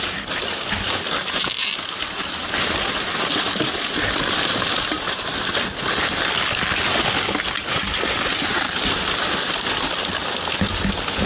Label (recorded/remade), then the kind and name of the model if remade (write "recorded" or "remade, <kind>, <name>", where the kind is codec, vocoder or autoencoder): recorded